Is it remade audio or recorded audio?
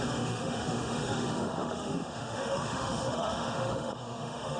remade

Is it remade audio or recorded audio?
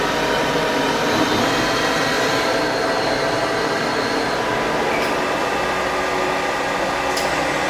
recorded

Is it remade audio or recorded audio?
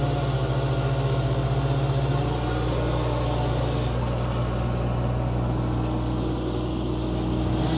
recorded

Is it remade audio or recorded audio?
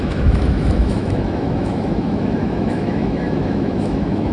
remade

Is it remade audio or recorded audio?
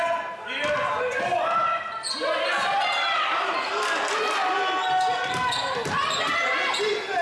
recorded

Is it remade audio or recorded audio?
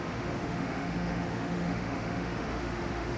remade